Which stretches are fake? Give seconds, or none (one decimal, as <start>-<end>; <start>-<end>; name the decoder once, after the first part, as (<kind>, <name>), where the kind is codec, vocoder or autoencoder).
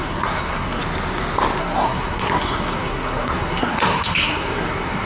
0.0-0.8 (codec, SNAC); 1.6-5.1